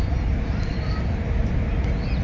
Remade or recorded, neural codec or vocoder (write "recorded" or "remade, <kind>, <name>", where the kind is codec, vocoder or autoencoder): recorded